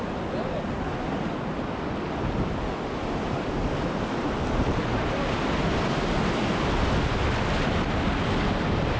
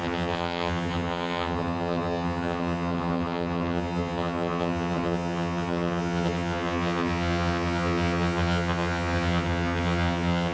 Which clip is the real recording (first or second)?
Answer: first